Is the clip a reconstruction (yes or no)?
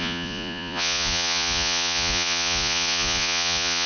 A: yes